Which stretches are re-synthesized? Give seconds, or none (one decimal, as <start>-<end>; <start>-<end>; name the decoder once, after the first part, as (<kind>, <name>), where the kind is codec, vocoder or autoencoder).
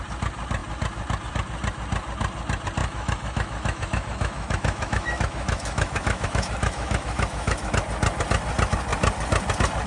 2.8-7.7 (autoencoder, DAC-VAE)